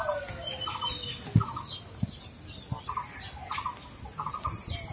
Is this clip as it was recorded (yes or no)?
yes